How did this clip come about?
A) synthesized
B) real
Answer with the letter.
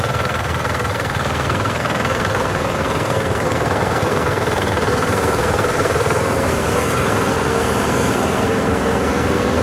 A